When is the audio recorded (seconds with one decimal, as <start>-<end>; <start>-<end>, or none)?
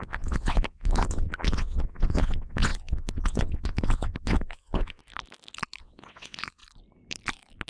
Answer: 5.0-5.8; 6.6-7.7